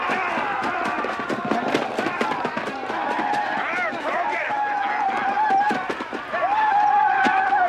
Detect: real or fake real